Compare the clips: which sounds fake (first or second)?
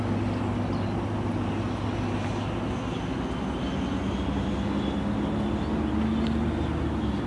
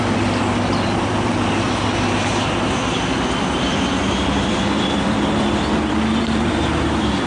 second